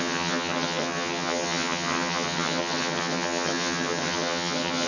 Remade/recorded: remade